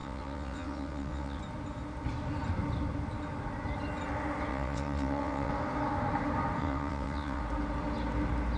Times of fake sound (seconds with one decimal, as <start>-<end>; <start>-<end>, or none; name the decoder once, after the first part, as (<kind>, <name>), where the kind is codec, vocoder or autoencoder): 0.0-1.4 (vocoder, WaveNeXt); 4.5-5.5; 6.6-7.4